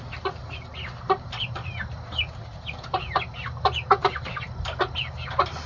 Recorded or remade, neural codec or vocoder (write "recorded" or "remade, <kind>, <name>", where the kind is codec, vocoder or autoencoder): recorded